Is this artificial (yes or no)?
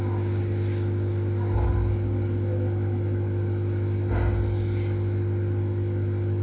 no